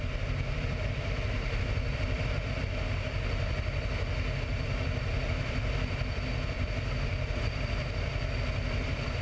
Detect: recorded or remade remade